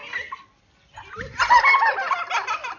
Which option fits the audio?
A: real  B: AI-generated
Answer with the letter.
A